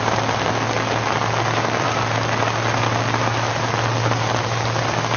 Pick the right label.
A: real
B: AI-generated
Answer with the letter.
A